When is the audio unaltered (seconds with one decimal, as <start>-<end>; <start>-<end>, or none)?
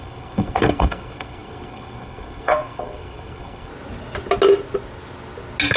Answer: 3.7-5.8